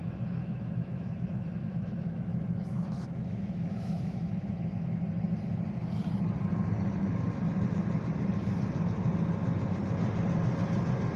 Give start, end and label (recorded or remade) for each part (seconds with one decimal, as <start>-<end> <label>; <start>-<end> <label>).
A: 0.0-5.0 remade; 5.0-11.2 recorded